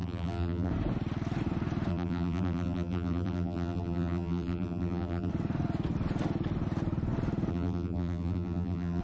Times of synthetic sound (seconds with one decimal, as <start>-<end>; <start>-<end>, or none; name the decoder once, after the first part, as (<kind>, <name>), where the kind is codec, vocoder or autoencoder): 0.0-0.7 (vocoder, BigVGAN v2); 1.9-5.3; 7.5-9.0